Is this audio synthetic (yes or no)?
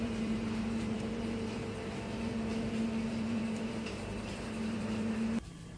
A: yes